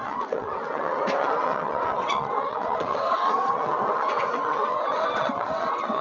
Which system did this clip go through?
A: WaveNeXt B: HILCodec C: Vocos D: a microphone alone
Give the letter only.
A